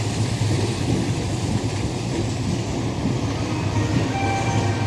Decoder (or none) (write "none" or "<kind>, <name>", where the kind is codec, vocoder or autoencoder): none